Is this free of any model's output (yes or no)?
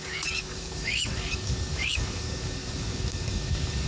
no